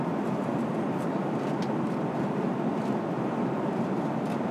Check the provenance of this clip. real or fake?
real